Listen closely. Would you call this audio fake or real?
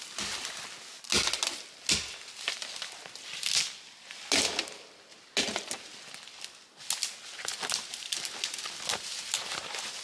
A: real